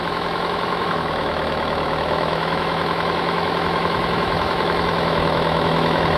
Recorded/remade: remade